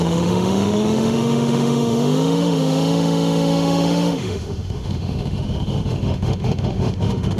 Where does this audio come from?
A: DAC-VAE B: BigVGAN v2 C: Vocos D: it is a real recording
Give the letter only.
A